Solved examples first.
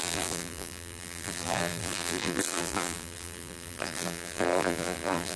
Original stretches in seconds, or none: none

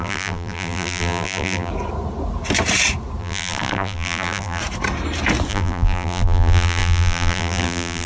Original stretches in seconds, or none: 1.7-3.2; 4.6-5.5

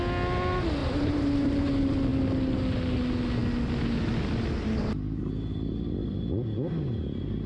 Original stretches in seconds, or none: 0.0-0.8; 1.7-7.5

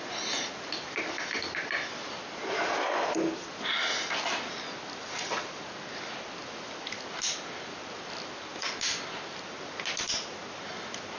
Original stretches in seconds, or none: 0.0-11.2

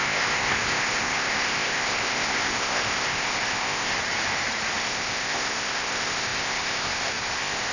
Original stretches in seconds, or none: 3.9-4.8